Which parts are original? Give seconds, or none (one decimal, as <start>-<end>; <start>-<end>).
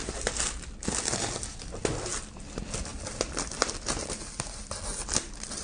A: 0.0-5.6